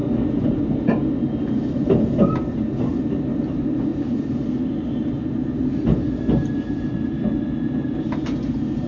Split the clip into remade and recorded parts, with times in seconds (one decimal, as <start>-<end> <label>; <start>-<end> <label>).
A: 0.0-8.9 recorded